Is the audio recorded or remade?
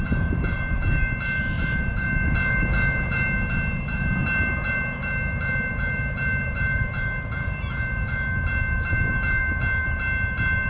remade